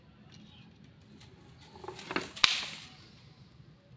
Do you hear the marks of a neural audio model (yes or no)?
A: no